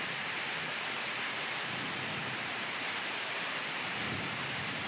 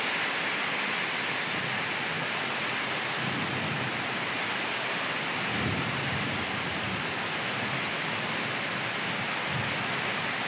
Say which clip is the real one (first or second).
second